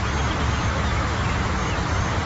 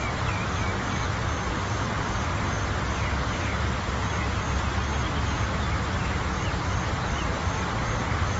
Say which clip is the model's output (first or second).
first